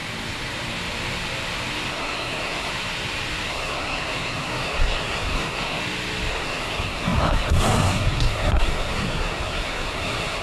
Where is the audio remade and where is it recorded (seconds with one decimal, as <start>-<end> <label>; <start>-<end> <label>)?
0.0-1.9 recorded; 1.9-2.7 remade; 2.7-3.5 recorded; 3.5-5.8 remade; 5.8-6.3 recorded; 6.3-10.4 remade